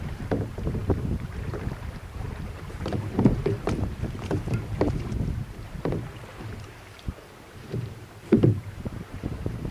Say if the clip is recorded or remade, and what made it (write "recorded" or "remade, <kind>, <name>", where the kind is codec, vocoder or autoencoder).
remade, vocoder, BigVGAN v2